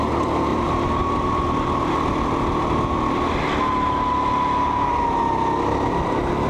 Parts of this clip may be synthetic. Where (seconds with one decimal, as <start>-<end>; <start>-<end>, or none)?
0.5-1.4